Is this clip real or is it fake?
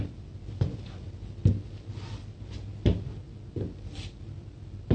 real